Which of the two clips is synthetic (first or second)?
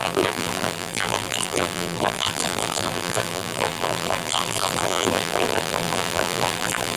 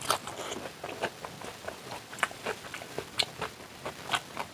first